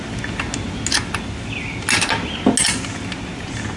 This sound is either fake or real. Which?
real